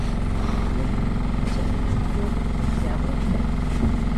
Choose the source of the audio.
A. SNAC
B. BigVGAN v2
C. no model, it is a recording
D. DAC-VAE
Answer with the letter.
C